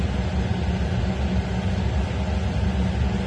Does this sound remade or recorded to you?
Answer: recorded